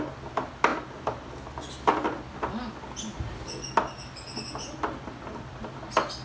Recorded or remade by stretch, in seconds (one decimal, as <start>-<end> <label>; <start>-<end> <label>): 0.0-6.2 recorded